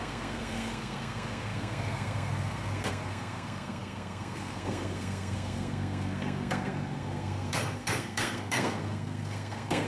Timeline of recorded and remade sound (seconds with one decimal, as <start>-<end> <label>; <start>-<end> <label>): 0.0-9.9 remade